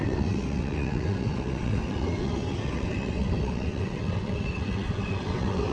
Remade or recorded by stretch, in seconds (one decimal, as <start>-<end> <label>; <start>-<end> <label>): 0.0-5.7 remade

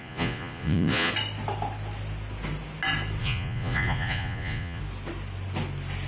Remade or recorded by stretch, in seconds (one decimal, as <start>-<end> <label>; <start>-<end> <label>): 0.0-1.1 remade; 1.1-3.2 recorded; 3.2-4.8 remade; 4.8-6.1 recorded